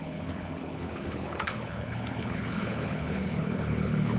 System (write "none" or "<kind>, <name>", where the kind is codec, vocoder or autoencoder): codec, HILCodec